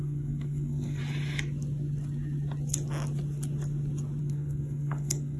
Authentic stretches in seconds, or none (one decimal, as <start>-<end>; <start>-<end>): 1.0-4.2